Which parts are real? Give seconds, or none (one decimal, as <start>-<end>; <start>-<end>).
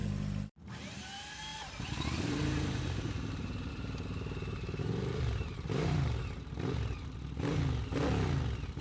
6.2-8.8